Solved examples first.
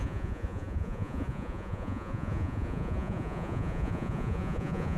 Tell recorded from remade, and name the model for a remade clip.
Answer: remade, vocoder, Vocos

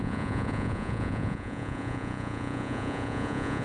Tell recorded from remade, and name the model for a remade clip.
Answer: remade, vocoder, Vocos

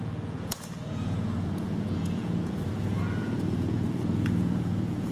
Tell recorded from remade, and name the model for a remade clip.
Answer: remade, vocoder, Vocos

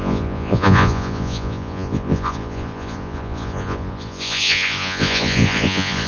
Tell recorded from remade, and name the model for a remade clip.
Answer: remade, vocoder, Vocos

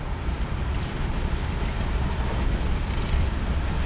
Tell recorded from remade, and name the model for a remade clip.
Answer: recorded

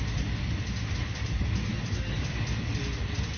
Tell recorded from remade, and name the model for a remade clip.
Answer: recorded